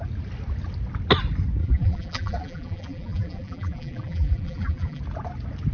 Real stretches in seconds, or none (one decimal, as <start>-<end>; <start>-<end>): 0.0-1.6; 5.0-5.7